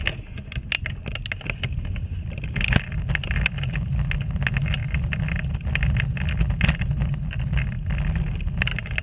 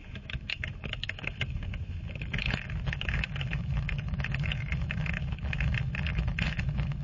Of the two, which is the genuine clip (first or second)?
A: first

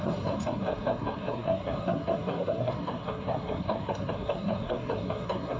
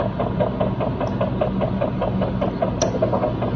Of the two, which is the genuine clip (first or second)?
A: second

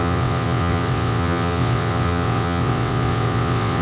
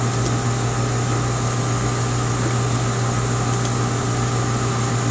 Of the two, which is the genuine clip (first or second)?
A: second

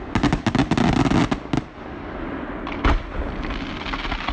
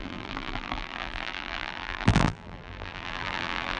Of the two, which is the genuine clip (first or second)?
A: first